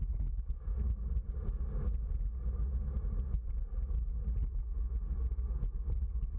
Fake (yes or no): no